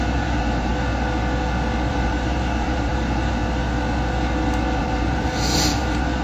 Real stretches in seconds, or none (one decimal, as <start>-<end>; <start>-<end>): 0.7-1.9; 3.4-4.8